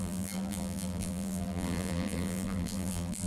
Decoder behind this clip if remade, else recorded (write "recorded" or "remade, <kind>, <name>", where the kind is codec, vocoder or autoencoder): remade, vocoder, BigVGAN v2